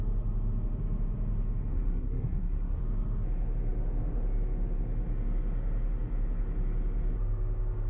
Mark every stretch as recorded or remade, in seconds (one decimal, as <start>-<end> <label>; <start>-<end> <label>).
0.0-1.7 recorded; 1.7-2.8 remade; 2.8-7.9 recorded